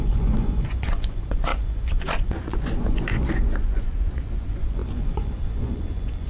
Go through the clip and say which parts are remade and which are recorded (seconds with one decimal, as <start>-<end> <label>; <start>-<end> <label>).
0.0-6.3 remade